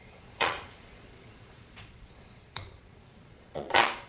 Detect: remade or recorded remade